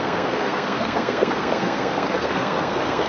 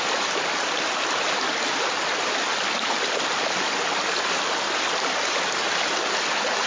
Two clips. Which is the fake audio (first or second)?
first